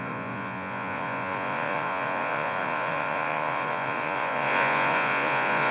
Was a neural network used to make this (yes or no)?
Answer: yes